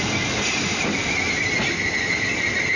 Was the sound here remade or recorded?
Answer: recorded